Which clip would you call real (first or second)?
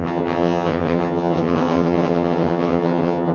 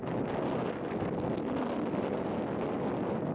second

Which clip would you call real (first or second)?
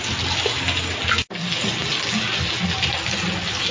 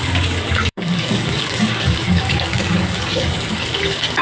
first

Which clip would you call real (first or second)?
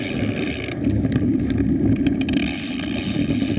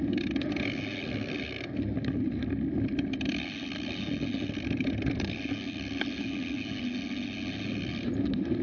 second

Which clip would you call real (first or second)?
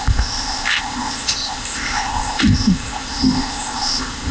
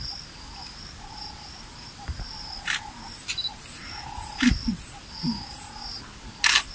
second